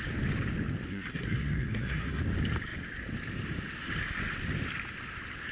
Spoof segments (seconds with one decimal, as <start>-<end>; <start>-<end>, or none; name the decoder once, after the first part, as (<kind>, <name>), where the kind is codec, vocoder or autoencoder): 0.9-2.2 (codec, SNAC)

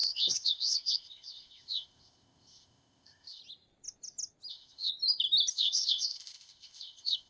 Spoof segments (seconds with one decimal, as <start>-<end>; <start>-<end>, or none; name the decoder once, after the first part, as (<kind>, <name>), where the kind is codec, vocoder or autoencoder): 0.0-3.4 (codec, ZipCodec); 4.5-4.9; 5.5-7.3

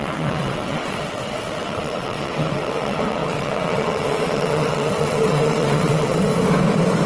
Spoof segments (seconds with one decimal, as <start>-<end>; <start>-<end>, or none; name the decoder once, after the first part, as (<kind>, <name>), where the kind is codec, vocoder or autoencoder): 0.0-6.3 (vocoder, WaveNeXt)

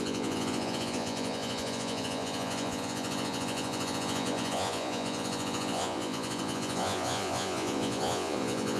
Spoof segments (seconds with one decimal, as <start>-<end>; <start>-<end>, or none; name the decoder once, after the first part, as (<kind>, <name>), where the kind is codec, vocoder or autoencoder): 0.0-8.8 (vocoder, Vocos)